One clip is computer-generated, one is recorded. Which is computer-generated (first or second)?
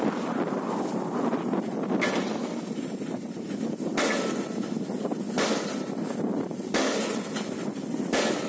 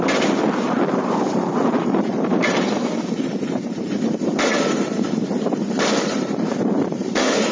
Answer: second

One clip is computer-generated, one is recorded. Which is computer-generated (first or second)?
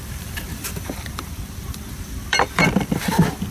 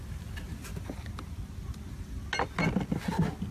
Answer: first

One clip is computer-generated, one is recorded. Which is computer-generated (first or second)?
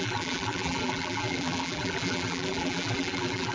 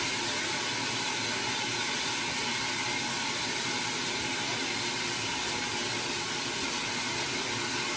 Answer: first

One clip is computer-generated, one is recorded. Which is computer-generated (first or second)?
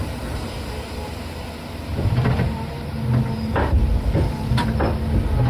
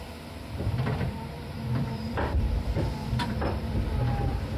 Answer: second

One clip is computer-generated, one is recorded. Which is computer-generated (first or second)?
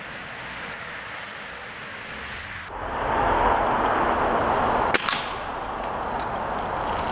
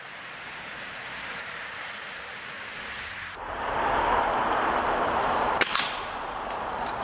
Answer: second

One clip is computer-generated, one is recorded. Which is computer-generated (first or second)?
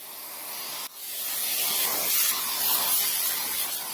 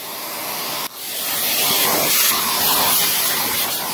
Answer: second